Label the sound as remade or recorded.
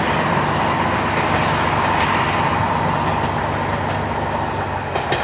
recorded